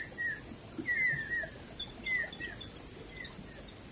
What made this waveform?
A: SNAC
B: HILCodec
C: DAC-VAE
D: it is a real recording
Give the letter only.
D